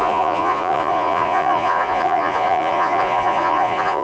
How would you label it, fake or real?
fake